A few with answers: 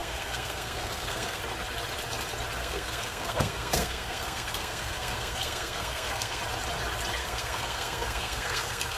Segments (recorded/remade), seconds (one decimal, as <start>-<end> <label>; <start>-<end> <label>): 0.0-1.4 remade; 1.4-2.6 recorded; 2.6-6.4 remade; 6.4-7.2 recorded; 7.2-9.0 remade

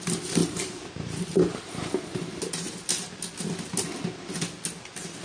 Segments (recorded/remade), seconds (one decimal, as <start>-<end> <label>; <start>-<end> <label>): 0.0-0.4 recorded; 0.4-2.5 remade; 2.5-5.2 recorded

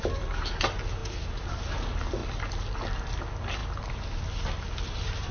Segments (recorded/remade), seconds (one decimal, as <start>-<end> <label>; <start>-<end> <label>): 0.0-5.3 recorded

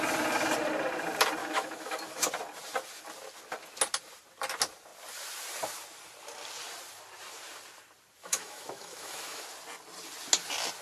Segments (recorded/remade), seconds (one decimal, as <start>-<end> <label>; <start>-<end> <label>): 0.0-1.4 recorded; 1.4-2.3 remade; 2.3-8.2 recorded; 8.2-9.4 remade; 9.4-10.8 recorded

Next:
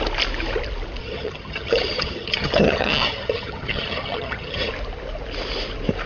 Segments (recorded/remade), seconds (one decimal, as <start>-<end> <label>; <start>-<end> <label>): 0.0-1.0 recorded; 1.0-4.7 remade; 4.7-6.1 recorded

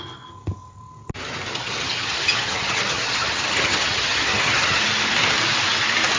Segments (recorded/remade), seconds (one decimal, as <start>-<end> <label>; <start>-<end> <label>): 0.0-1.5 recorded; 1.5-4.8 remade; 4.8-6.2 recorded

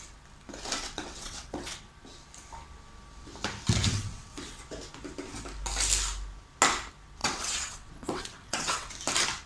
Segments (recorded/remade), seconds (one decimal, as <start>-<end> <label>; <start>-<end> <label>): 0.0-0.8 recorded; 0.8-1.9 remade; 1.9-3.9 recorded; 3.9-4.6 remade; 4.6-7.2 recorded; 7.2-8.9 remade; 8.9-9.5 recorded

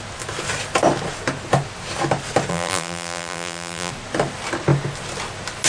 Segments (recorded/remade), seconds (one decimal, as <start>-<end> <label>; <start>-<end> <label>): 0.0-2.5 recorded; 2.5-3.9 remade; 3.9-5.7 recorded